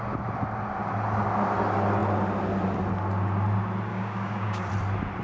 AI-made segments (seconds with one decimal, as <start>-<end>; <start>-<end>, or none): 3.9-4.7